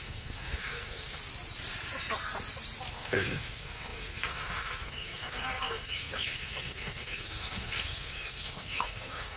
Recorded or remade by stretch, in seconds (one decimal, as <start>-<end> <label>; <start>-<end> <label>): 0.0-1.2 remade; 1.2-2.9 recorded; 2.9-9.4 remade